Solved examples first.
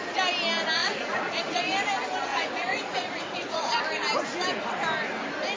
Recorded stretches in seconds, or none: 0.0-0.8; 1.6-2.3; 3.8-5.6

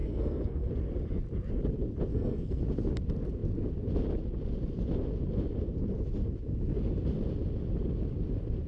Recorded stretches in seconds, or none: 0.7-2.1; 2.6-8.7

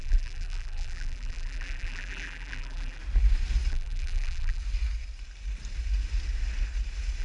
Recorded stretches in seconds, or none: 3.0-3.7; 4.6-7.2

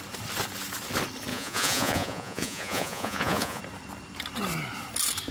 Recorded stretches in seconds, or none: 0.0-1.3; 3.6-5.3